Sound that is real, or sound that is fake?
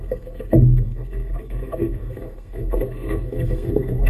fake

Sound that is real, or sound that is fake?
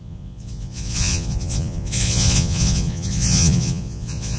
fake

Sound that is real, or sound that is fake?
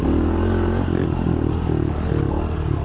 real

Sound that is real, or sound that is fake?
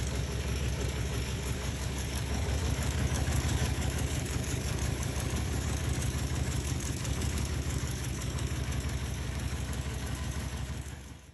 fake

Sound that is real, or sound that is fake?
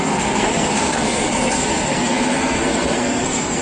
fake